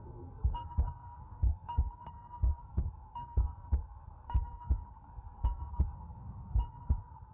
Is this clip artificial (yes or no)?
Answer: yes